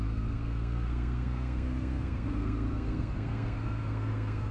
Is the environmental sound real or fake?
fake